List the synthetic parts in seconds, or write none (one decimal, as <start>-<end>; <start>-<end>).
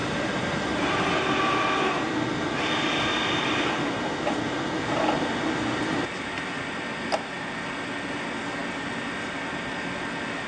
0.0-2.0